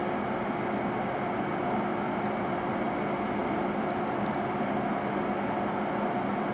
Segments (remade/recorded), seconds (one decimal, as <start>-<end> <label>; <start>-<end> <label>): 0.0-1.9 recorded; 1.9-2.8 remade; 2.8-3.4 recorded; 3.4-4.9 remade; 4.9-6.5 recorded